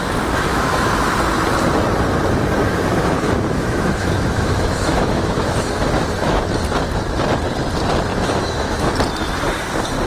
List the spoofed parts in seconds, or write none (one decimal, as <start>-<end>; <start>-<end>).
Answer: 0.5-1.1; 2.6-6.4; 8.1-8.9

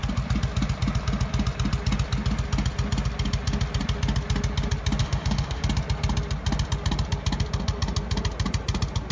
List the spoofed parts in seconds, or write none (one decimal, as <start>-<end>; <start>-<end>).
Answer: 5.0-5.6

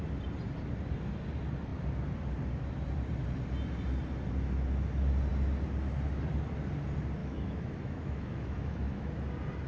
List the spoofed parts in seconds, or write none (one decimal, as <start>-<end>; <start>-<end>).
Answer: 7.2-9.1